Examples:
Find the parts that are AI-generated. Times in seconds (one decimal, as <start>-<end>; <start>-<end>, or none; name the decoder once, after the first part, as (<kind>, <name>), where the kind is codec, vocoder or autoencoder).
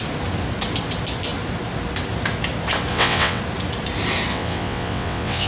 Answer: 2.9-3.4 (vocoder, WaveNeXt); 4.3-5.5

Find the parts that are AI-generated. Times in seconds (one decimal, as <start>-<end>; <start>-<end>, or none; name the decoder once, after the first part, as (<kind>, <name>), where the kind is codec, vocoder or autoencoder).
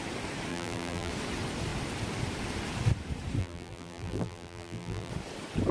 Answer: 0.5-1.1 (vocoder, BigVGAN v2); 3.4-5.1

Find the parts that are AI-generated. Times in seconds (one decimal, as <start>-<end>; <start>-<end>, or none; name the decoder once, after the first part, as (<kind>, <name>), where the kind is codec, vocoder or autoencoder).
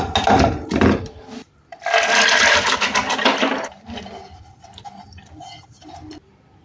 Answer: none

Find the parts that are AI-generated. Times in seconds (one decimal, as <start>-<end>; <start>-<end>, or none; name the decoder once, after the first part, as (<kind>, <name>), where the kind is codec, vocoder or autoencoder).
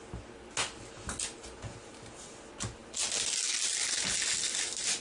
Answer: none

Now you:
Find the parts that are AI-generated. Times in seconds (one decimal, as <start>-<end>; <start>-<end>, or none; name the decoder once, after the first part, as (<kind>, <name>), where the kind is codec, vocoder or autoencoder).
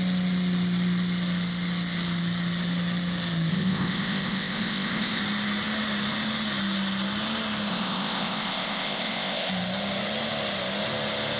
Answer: 3.5-5.2 (codec, ZipCodec); 7.7-9.5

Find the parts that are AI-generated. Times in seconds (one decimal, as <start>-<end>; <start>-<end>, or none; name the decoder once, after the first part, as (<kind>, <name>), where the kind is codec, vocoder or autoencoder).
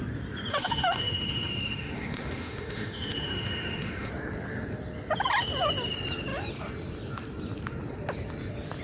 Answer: 0.5-4.1 (autoencoder, DAC-VAE)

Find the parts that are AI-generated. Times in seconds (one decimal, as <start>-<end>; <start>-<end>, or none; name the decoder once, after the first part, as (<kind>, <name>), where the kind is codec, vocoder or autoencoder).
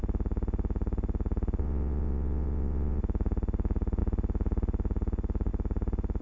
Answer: 1.6-3.0 (vocoder, WaveNeXt)